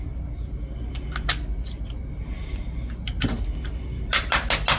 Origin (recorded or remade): recorded